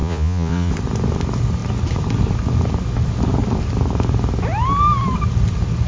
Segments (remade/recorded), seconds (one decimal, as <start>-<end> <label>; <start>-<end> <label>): 0.0-0.7 remade; 0.7-5.9 recorded